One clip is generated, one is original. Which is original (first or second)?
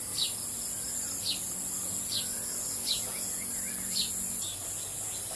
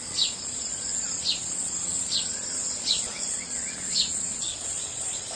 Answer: first